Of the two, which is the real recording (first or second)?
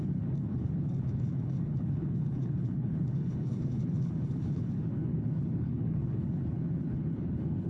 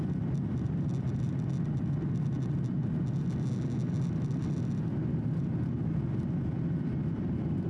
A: second